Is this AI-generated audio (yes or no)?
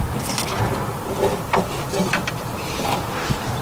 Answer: no